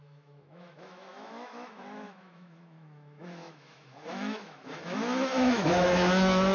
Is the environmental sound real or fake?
fake